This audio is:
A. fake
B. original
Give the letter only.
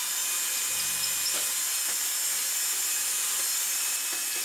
B